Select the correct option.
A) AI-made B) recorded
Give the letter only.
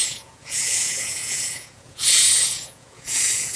A